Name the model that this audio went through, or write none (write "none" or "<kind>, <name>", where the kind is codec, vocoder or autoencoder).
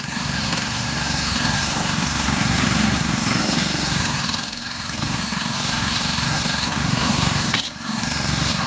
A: codec, SNAC